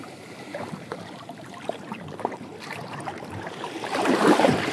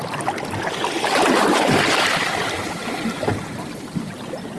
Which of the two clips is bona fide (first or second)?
second